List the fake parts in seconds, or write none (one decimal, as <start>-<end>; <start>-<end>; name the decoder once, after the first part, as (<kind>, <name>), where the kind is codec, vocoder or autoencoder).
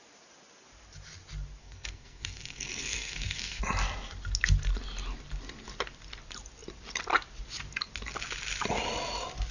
1.6-3.6 (codec, SNAC)